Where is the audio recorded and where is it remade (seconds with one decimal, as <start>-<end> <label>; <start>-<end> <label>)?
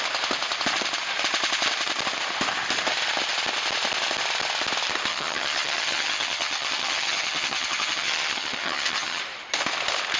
0.0-5.1 recorded; 5.1-9.2 remade; 9.2-10.2 recorded